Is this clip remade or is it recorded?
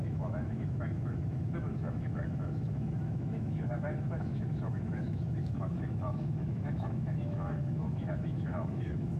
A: remade